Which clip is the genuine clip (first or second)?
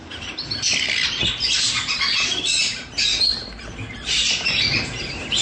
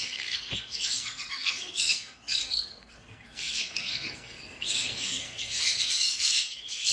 first